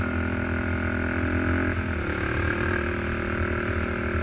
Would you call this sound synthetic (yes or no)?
no